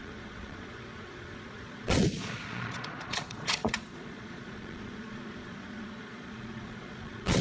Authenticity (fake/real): fake